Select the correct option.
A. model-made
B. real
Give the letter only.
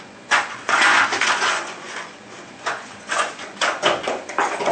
A